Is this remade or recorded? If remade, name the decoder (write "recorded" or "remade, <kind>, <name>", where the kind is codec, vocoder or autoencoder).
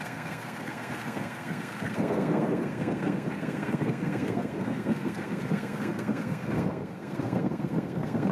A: remade, codec, SNAC